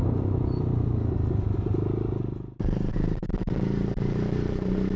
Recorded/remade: recorded